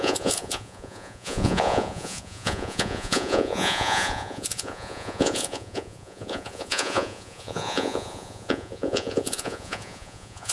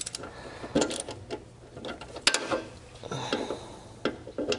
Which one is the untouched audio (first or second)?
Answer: second